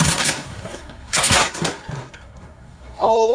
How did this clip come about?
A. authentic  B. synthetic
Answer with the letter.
B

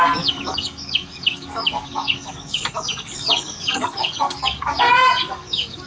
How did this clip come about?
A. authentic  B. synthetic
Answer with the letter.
B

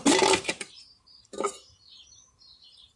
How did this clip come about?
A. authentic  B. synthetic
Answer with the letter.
A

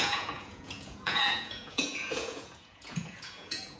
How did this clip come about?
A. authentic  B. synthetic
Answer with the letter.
B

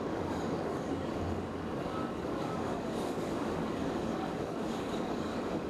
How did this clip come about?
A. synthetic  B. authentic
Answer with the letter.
A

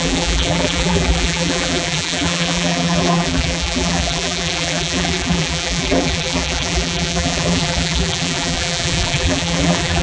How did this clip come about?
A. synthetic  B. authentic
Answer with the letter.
A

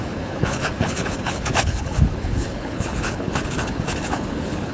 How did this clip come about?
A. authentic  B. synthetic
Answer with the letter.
B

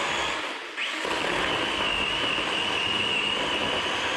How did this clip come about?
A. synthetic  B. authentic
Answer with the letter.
B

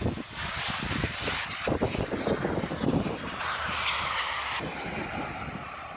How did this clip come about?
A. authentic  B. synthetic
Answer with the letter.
A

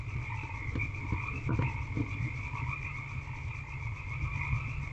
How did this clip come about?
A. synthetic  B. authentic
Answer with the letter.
B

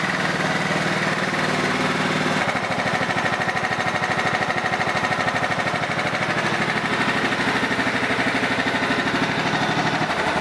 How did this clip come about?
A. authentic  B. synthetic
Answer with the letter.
A